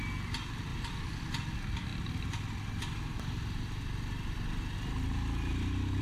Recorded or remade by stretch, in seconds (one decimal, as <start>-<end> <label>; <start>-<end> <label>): 0.0-6.0 recorded

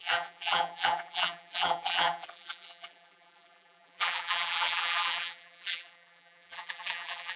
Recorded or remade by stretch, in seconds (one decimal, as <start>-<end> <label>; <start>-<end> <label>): 0.0-7.4 remade

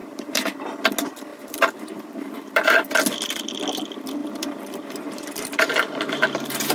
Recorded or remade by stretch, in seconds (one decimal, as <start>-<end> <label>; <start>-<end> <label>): 0.0-0.5 remade; 0.5-1.3 recorded; 1.3-2.9 remade; 2.9-4.2 recorded; 4.2-6.7 remade